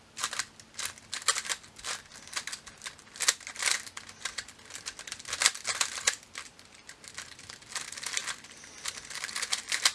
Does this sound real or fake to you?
real